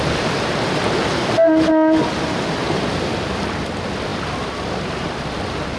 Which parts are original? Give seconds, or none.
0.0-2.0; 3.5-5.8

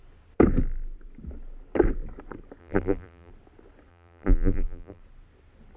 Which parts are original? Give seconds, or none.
0.0-2.6; 3.3-3.9; 5.0-5.8

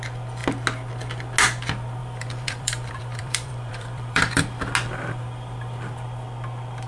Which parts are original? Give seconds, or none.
0.0-2.0; 4.4-6.9

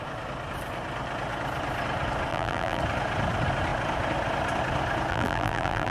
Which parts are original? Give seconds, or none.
0.0-2.3; 2.8-5.1

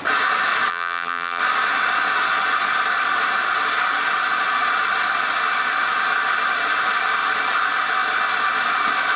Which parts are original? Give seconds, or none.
0.0-0.7; 1.4-9.2

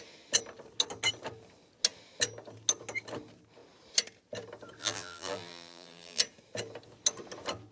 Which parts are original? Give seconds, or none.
0.0-4.8; 6.2-7.7

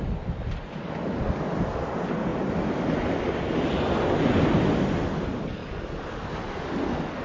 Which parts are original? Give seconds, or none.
0.0-7.2